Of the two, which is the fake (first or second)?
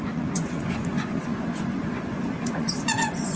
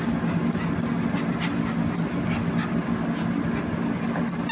first